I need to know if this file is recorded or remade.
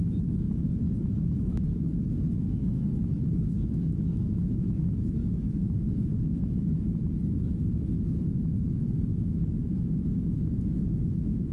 remade